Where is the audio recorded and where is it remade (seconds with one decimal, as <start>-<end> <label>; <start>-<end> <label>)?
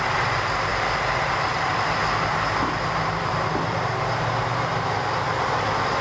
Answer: 0.0-0.7 recorded; 0.7-4.3 remade; 4.3-6.0 recorded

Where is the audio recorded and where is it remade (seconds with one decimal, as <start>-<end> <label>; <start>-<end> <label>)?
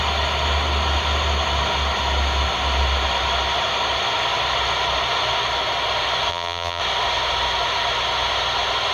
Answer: 0.0-6.3 recorded; 6.3-6.8 remade; 6.8-8.9 recorded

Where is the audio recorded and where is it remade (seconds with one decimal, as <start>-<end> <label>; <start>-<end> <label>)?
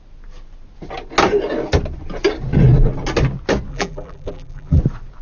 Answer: 0.0-3.7 recorded; 3.7-4.8 remade; 4.8-5.2 recorded